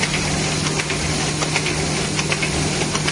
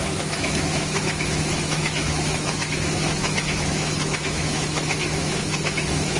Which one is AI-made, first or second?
second